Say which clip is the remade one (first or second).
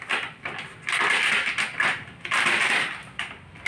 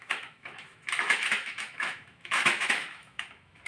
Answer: second